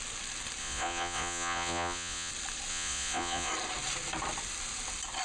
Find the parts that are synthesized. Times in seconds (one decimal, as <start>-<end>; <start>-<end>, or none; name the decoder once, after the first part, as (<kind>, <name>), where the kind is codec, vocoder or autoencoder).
0.6-2.3 (vocoder, Vocos); 2.7-3.5